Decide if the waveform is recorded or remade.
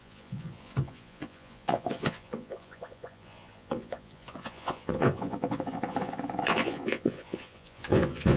remade